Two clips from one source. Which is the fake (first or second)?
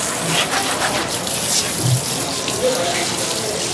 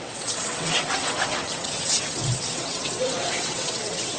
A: second